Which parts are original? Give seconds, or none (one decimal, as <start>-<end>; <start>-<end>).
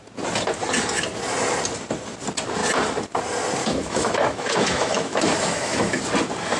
0.0-3.6; 6.0-6.6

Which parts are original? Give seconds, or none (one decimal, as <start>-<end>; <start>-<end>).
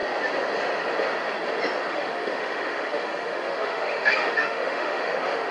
0.0-1.9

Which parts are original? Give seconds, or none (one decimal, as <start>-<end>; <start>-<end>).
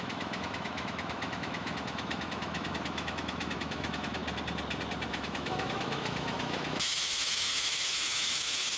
4.2-5.1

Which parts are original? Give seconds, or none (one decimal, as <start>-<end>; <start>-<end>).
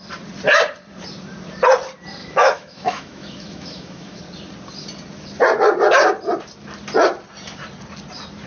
0.0-2.2; 4.2-8.5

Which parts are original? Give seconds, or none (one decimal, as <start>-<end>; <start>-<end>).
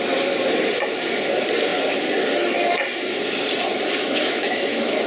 0.0-4.0